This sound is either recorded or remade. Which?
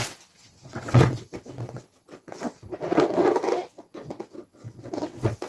remade